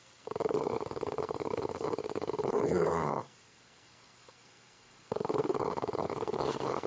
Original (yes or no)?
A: no